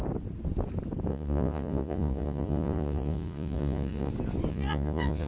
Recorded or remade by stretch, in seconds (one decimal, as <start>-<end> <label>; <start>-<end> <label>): 0.0-1.1 recorded; 1.1-4.1 remade; 4.1-4.5 recorded; 4.5-5.3 remade